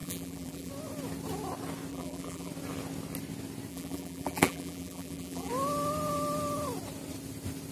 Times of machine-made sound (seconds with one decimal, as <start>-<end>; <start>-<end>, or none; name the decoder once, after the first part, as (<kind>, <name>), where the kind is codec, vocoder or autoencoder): 0.0-0.7 (vocoder, BigVGAN v2); 1.9-2.5; 3.7-5.5